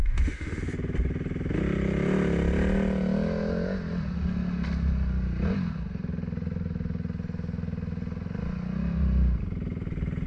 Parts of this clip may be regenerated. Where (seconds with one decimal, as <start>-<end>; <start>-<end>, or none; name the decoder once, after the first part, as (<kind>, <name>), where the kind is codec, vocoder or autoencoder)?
0.0-0.6 (autoencoder, DAC-VAE)